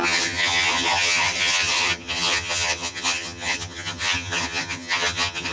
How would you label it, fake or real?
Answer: fake